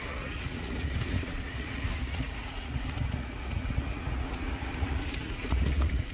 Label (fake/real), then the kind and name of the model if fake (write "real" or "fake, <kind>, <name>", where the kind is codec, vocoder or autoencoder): fake, vocoder, Vocos